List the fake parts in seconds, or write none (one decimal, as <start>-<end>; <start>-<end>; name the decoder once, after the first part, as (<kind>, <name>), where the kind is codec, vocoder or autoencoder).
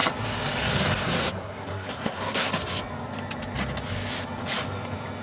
1.2-2.5 (codec, SNAC)